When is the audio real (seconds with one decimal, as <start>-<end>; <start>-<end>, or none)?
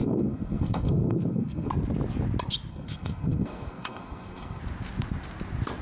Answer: 1.7-2.7; 4.6-5.8